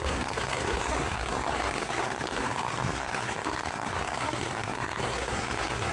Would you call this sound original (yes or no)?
no